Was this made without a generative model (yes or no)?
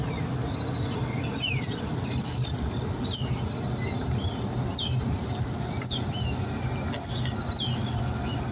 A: yes